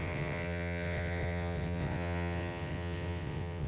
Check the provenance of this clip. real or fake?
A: fake